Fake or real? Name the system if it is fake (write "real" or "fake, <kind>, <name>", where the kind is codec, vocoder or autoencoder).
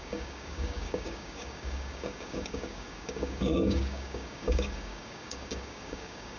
fake, codec, DAC